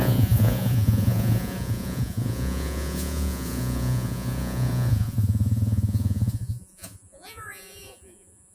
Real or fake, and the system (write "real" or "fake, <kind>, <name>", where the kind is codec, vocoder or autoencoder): fake, vocoder, Vocos